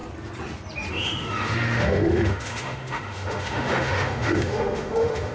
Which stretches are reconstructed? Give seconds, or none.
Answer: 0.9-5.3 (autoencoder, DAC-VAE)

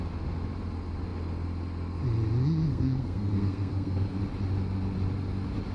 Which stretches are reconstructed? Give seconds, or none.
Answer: 2.7-4.2 (codec, SNAC)

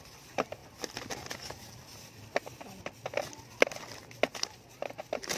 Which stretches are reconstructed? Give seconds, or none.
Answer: none

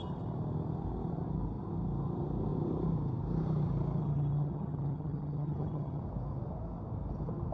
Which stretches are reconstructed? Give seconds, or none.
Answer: 4.0-6.0 (vocoder, HiFi-GAN)